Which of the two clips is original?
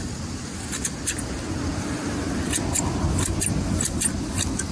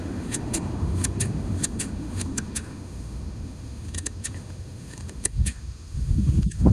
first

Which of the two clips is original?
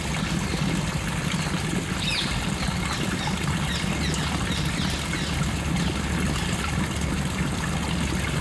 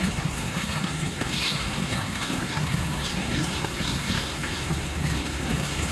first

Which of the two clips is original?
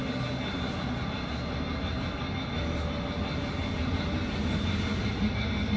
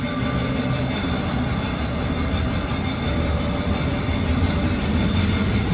first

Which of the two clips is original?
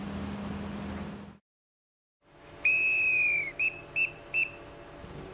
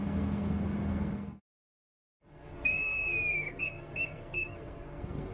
first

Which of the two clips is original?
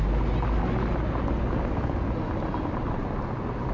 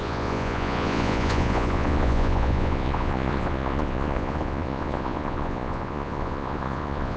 first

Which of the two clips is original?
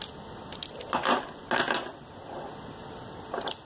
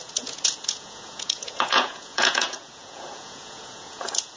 first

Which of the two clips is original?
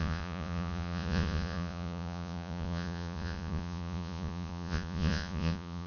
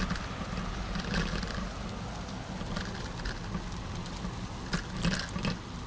second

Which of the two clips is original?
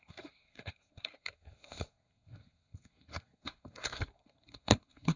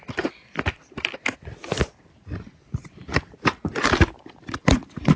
second